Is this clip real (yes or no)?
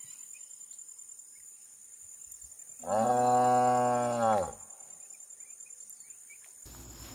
yes